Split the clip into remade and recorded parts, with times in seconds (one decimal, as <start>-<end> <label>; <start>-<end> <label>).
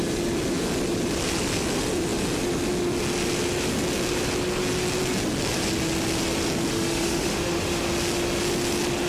0.0-6.7 recorded; 6.7-7.8 remade; 7.8-9.1 recorded